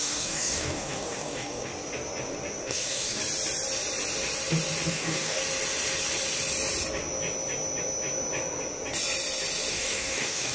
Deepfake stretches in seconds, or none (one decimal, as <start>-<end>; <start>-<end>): 0.0-1.7; 2.6-3.2; 4.9-5.4; 9.7-10.5